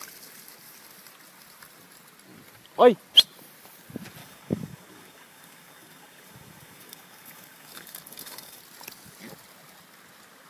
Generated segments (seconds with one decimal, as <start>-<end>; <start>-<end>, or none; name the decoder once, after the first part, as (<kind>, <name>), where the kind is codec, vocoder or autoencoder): 4.2-8.6 (codec, DAC)